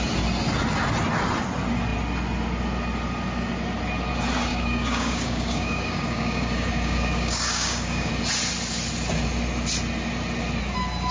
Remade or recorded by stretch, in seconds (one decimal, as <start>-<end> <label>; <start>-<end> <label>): 0.0-4.5 recorded; 4.5-8.1 remade; 8.1-11.1 recorded